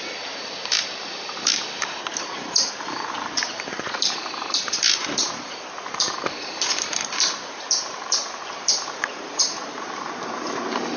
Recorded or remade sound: remade